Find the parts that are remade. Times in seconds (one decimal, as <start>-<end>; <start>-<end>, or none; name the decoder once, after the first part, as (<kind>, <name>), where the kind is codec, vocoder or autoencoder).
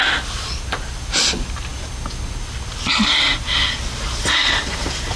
none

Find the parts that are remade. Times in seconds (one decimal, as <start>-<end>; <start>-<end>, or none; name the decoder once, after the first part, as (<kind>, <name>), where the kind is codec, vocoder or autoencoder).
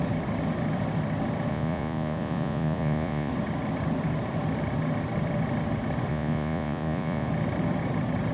1.5-3.3 (vocoder, Vocos); 6.1-7.3